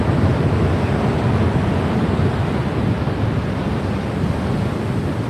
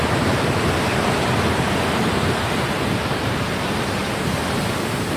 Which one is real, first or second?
first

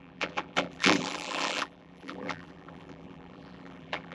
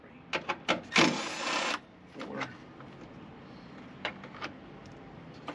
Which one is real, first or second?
second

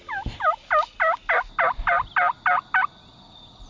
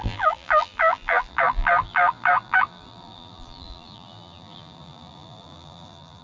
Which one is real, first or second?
first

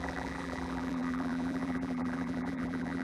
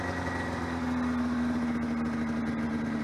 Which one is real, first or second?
second